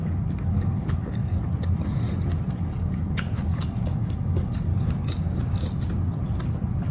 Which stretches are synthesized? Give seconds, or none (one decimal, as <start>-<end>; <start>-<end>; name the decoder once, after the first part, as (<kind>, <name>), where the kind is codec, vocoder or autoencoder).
0.0-1.3 (codec, DAC); 2.5-4.7